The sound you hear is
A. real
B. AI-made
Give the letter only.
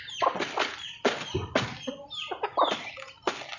A